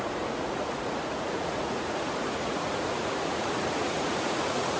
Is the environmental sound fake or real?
fake